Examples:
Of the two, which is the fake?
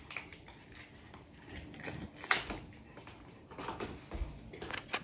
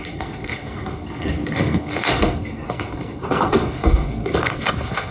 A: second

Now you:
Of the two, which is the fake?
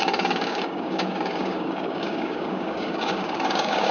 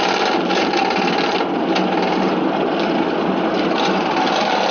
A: first